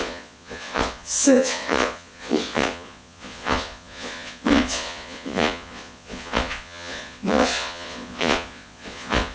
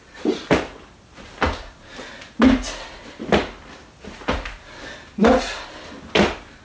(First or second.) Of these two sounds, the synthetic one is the first